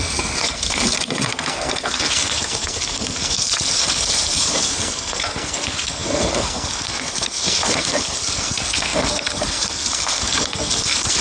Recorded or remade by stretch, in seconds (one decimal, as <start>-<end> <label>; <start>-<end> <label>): 0.0-11.2 remade